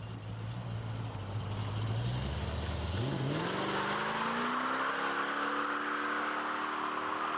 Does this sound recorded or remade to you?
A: recorded